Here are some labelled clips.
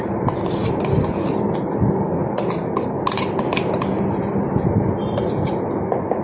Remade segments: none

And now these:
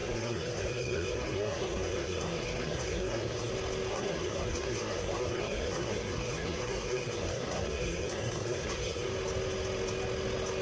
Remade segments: 0.0-3.5; 3.9-9.1

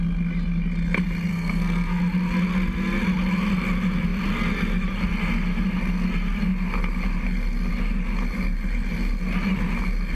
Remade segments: 1.3-2.0

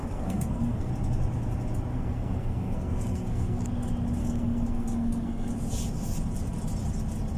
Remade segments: 0.0-0.9; 1.9-3.6; 4.2-5.5

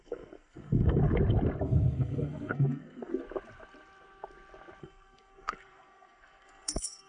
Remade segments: 0.0-1.0; 1.6-3.1; 4.8-7.1

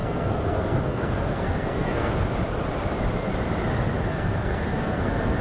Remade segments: 0.0-2.1; 4.1-5.4